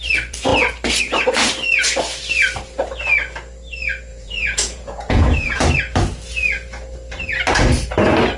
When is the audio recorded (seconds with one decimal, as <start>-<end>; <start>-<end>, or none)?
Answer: 0.0-4.1; 5.6-8.4